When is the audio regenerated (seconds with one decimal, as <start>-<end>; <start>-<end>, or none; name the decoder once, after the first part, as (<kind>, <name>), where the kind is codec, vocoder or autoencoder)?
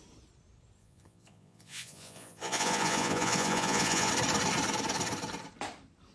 0.8-4.1 (vocoder, Vocos)